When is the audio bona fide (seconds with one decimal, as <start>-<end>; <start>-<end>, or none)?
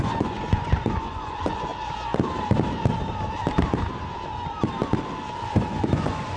1.7-5.5